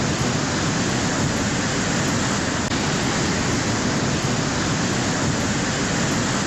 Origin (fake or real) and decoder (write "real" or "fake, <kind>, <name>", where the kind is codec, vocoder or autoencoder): real